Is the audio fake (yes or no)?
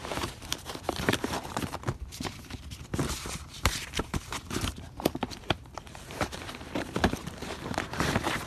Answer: yes